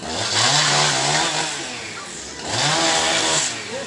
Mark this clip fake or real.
real